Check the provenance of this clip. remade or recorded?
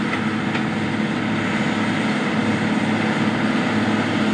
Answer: recorded